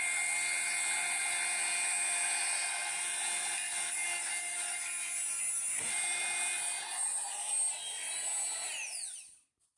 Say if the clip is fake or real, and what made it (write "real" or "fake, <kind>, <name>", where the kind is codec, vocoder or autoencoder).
real